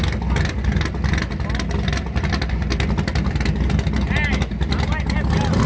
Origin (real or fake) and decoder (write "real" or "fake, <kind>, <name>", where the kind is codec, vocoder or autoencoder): real